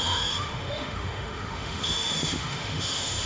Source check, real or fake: fake